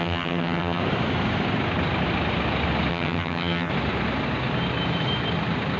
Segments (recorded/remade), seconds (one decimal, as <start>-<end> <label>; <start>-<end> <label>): 0.0-0.8 remade; 0.8-2.9 recorded; 2.9-3.7 remade; 3.7-5.8 recorded